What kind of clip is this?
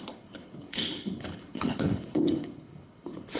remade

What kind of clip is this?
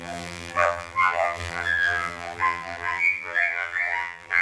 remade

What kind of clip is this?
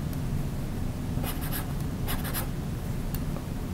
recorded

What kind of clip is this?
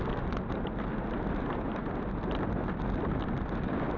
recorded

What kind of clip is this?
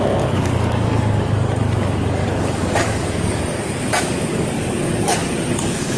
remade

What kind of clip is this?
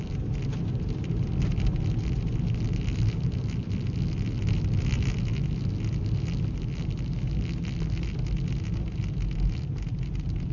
recorded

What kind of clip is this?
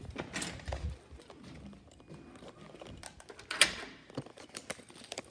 recorded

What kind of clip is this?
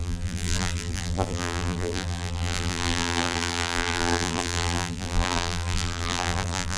remade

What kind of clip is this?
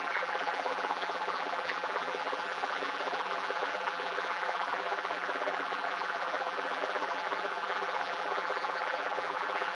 remade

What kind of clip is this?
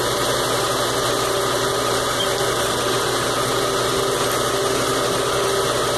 recorded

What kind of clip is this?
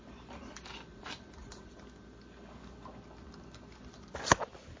recorded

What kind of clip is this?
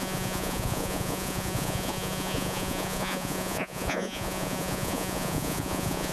remade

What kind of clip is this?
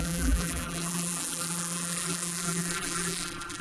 remade